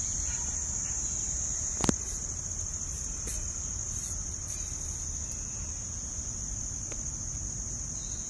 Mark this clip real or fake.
real